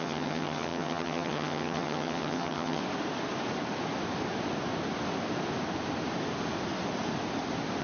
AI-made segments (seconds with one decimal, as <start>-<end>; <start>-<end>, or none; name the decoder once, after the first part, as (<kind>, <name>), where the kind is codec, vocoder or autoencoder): 0.0-2.8 (vocoder, HiFi-GAN)